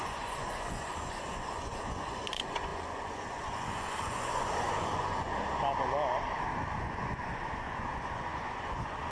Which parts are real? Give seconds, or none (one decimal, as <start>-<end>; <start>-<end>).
5.4-6.8